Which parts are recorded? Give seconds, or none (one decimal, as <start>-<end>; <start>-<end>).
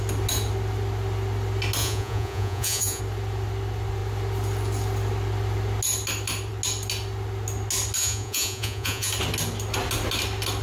0.0-1.8; 3.0-8.0; 9.1-10.6